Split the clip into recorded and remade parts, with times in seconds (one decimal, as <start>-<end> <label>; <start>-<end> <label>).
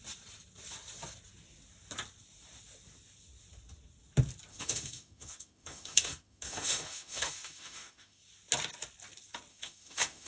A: 0.0-4.5 recorded; 4.5-8.2 remade; 8.2-9.5 recorded; 9.5-10.3 remade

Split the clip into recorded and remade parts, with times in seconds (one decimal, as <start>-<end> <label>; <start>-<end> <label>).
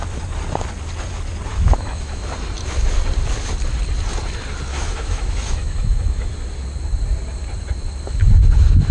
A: 0.0-1.5 recorded; 1.5-2.2 remade; 2.2-4.7 recorded; 4.7-6.3 remade; 6.3-8.9 recorded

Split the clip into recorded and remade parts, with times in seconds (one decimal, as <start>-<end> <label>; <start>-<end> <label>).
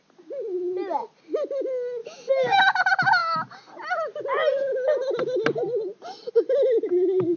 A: 0.0-2.0 recorded; 2.0-2.6 remade; 2.6-7.4 recorded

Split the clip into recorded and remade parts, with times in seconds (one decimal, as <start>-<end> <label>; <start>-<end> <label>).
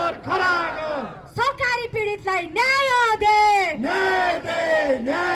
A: 0.0-2.6 recorded; 2.6-5.3 remade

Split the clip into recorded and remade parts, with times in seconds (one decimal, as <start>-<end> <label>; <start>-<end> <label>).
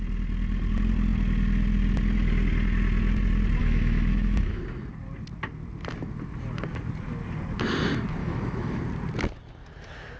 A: 0.0-3.6 recorded; 3.6-4.6 remade; 4.6-8.2 recorded; 8.2-8.8 remade; 8.8-10.2 recorded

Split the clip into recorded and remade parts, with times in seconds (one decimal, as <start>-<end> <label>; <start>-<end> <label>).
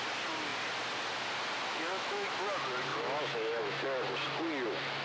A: 0.0-1.7 recorded; 1.7-2.3 remade; 2.3-2.9 recorded; 2.9-3.7 remade; 3.7-5.0 recorded